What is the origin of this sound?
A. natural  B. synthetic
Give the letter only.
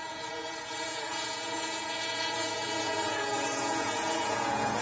B